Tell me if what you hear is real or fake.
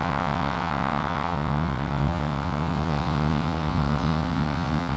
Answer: fake